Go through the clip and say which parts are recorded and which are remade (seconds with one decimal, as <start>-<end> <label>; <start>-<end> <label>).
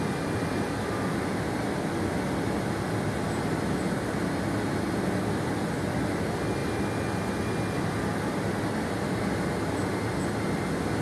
0.0-11.0 recorded